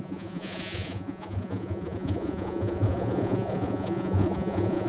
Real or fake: fake